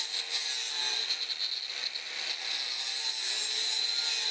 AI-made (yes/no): no